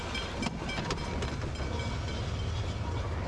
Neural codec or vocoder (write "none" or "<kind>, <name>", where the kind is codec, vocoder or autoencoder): none